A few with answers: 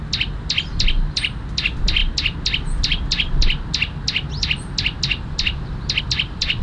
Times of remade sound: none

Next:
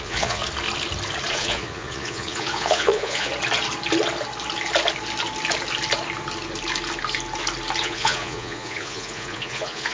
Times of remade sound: 0.0-0.4 (vocoder, Vocos); 1.3-3.3; 7.8-9.9

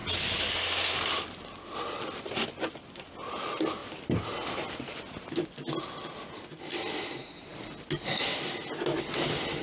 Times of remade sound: none

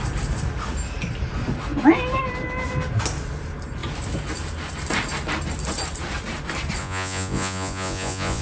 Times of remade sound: 6.8-8.4 (vocoder, Vocos)

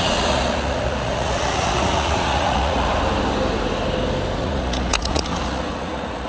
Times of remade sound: 0.0-2.9 (vocoder, Vocos); 4.4-6.3